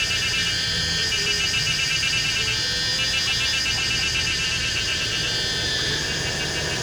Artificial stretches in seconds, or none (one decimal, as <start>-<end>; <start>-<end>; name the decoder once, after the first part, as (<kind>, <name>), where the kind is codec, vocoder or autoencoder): 0.4-2.1 (vocoder, BigVGAN v2)